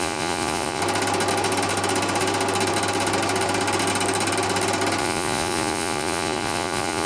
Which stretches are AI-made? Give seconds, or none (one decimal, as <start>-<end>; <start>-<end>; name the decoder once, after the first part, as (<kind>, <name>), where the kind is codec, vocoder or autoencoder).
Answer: 0.0-0.8 (vocoder, Vocos); 5.0-7.1